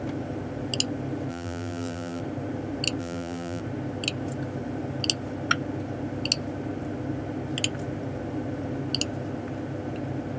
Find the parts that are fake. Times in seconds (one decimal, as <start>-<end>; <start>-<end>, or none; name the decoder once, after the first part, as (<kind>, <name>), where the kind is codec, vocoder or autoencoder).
1.3-2.2 (vocoder, BigVGAN v2); 3.0-3.6